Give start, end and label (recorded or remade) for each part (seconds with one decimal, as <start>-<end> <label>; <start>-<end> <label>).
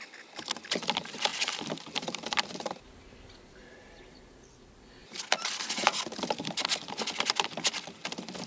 0.0-1.3 recorded; 1.3-4.0 remade; 4.0-5.0 recorded; 5.0-5.6 remade; 5.6-8.5 recorded